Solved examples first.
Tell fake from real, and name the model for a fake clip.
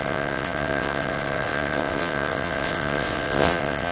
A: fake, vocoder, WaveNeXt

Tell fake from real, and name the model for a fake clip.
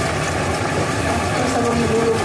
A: real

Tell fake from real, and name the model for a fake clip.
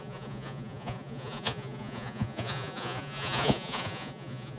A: fake, vocoder, Vocos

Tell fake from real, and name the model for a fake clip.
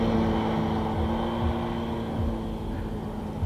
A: real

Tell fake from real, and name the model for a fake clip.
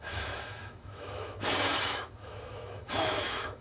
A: fake, autoencoder, DAC-VAE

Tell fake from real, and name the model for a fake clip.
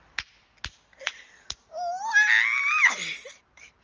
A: real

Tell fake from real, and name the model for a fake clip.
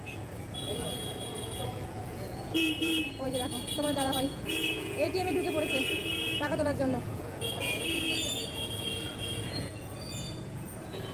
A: fake, vocoder, Vocos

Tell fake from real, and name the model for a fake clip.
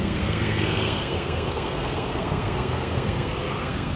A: fake, codec, SNAC